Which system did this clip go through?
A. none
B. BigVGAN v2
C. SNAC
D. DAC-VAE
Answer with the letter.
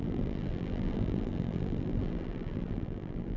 B